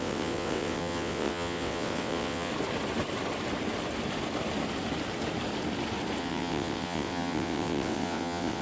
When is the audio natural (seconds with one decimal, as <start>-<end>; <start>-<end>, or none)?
2.5-6.2